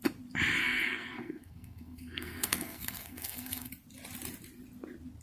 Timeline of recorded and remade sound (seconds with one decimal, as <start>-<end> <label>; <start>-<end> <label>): 0.0-0.6 recorded; 0.6-3.7 remade; 3.7-5.2 recorded